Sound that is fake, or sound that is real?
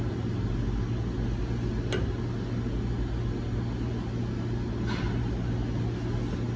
real